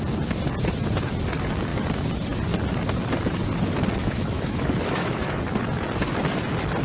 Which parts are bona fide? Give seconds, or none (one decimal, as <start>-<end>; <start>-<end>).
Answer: 0.0-4.0; 5.4-6.8